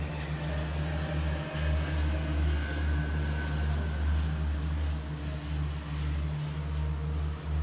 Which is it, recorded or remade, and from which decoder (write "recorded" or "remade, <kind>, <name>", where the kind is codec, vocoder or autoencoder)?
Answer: recorded